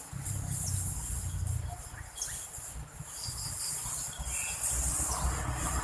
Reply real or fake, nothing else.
real